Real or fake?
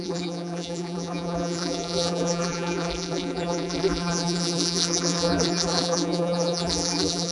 fake